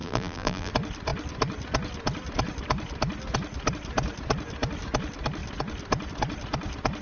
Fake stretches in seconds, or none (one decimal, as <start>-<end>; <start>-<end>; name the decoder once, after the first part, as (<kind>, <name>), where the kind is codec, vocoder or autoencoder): 0.0-0.7 (vocoder, BigVGAN v2)